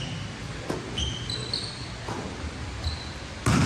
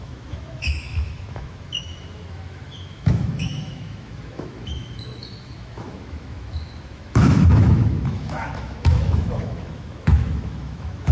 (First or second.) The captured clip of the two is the first